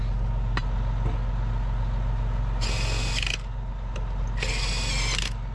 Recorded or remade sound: recorded